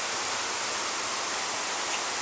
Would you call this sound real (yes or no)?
yes